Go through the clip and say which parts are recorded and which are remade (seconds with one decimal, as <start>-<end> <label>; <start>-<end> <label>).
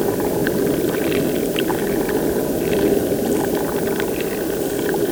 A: 0.0-5.1 recorded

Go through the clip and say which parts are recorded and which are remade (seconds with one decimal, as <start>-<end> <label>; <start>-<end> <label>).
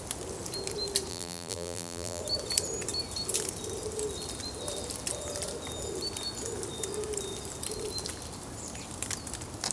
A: 0.0-1.1 recorded; 1.1-2.2 remade; 2.2-9.7 recorded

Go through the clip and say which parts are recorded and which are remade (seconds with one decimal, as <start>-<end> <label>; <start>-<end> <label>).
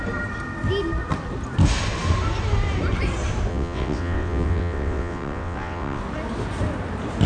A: 0.0-3.5 recorded; 3.5-6.0 remade; 6.0-7.3 recorded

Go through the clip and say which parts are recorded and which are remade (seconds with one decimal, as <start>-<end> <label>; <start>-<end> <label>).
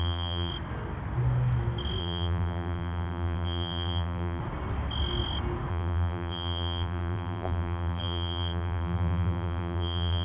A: 0.0-0.5 remade; 0.5-2.0 recorded; 2.0-4.4 remade; 4.4-5.7 recorded; 5.7-10.2 remade